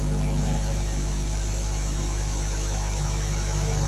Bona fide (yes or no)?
no